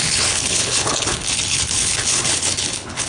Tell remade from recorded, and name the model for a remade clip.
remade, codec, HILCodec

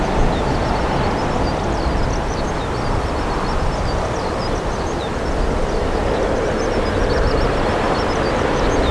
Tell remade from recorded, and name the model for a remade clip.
recorded